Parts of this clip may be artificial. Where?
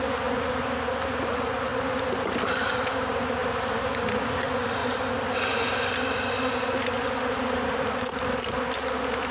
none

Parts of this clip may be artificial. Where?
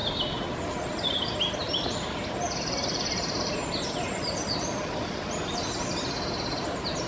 none